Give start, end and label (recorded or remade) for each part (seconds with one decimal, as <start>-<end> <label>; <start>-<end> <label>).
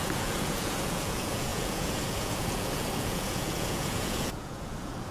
0.0-5.1 remade